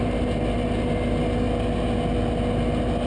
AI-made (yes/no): no